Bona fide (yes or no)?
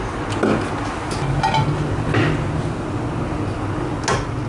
yes